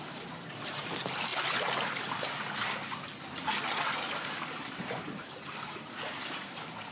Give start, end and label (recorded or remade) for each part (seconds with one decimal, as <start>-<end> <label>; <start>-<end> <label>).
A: 0.0-1.3 remade; 1.3-4.7 recorded; 4.7-6.9 remade